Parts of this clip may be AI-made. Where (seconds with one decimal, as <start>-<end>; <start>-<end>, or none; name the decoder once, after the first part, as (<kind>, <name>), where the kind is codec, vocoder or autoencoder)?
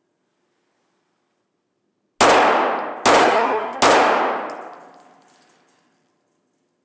3.2-3.8 (codec, SNAC)